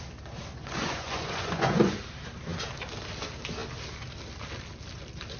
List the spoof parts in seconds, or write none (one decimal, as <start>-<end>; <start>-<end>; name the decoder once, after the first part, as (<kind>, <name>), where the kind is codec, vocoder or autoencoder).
0.6-2.0 (vocoder, Vocos)